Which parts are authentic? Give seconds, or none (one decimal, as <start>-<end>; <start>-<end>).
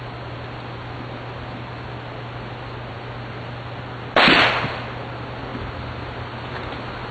0.0-7.1